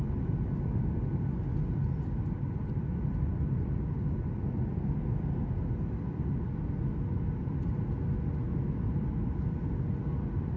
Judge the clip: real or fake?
real